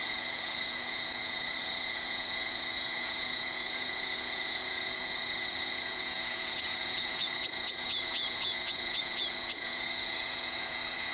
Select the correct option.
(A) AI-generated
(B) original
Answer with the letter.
A